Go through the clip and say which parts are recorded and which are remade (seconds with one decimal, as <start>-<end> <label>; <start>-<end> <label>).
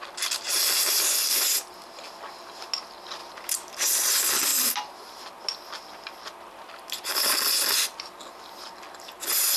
0.0-3.2 recorded; 3.2-4.1 remade; 4.1-4.5 recorded; 4.5-5.2 remade; 5.2-9.6 recorded